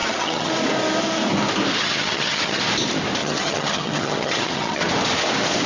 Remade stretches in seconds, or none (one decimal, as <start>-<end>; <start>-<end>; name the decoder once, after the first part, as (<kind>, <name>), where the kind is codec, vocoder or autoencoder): 0.0-0.5 (vocoder, HiFi-GAN); 1.8-2.6; 3.2-4.8